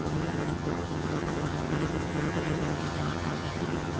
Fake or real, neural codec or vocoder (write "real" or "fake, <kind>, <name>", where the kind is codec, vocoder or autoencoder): fake, vocoder, HiFi-GAN